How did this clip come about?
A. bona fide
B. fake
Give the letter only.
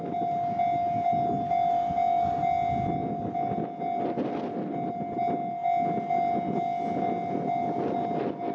A